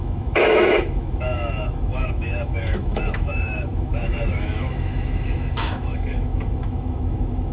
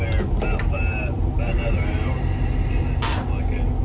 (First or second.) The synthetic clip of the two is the first